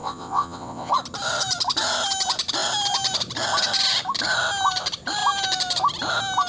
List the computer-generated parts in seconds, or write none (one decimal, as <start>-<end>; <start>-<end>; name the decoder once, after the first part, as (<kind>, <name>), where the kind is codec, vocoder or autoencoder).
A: 0.0-0.9 (vocoder, WaveNeXt)